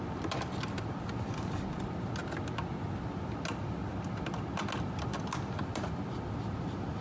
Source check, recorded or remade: recorded